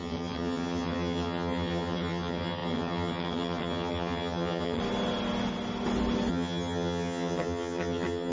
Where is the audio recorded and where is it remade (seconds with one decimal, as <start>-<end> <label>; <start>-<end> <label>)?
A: 0.0-4.8 remade; 4.8-6.3 recorded; 6.3-8.3 remade